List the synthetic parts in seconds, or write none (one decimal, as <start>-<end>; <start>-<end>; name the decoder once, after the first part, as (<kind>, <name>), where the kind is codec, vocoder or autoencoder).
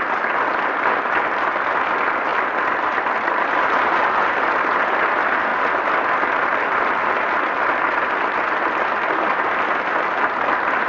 2.3-4.8 (vocoder, BigVGAN v2); 5.5-8.0